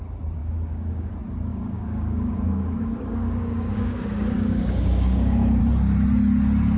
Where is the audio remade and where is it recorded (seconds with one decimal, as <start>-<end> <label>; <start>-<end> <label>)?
0.0-0.4 recorded; 0.4-1.1 remade; 1.1-1.5 recorded; 1.5-5.6 remade; 5.6-6.8 recorded